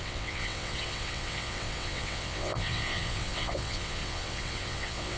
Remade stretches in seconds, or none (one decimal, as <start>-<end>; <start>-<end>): 0.0-5.2